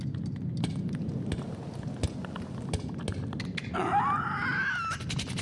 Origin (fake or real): real